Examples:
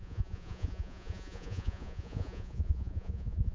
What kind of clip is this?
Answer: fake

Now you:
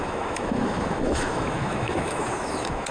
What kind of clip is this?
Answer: fake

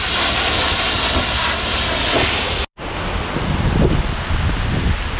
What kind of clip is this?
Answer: real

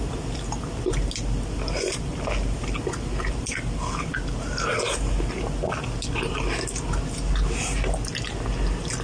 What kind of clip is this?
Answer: real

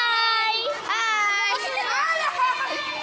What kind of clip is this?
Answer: real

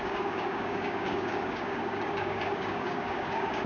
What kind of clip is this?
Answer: fake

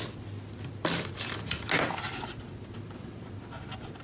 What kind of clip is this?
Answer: real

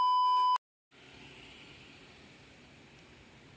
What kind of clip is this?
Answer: real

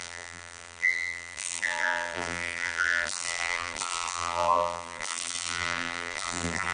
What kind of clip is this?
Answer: fake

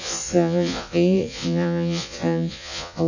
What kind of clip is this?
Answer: fake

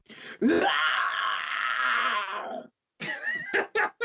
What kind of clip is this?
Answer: real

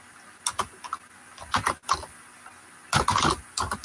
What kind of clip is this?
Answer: real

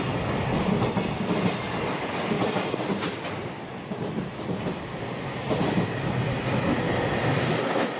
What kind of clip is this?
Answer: real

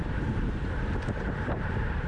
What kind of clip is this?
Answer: fake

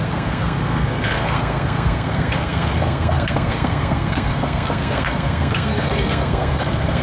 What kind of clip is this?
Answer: fake